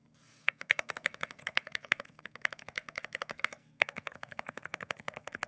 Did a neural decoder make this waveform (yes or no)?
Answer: yes